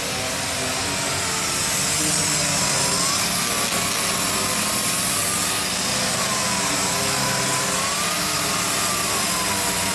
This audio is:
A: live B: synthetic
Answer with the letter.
A